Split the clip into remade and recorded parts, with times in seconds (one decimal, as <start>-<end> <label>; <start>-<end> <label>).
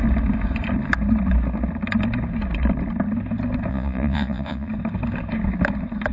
0.0-3.7 recorded; 3.7-4.7 remade; 4.7-6.1 recorded